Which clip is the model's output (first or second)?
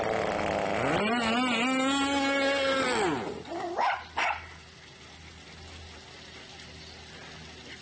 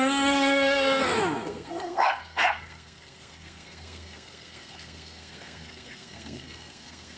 second